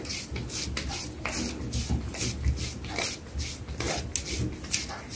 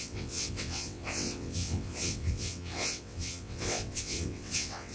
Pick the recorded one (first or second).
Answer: first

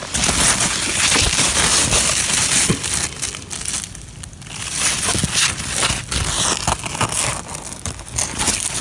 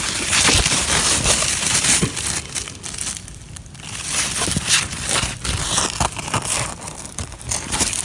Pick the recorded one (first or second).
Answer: first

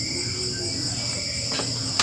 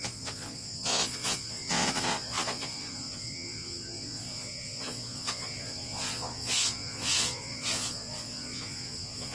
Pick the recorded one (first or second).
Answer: first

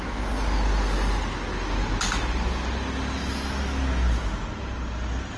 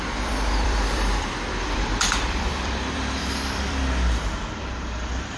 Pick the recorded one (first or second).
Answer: first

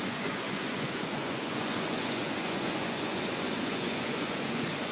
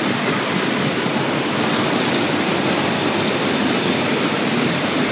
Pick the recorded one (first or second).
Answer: second